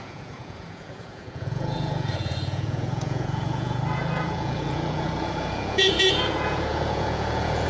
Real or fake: fake